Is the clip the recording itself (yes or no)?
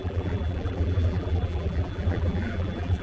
no